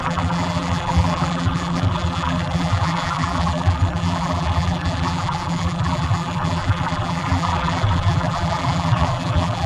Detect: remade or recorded remade